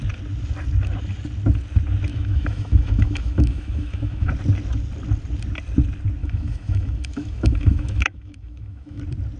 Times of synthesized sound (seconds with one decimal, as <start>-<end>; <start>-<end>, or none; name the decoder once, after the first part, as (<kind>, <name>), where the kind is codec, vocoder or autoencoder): 2.1-4.3 (autoencoder, DAC-VAE); 6.2-9.0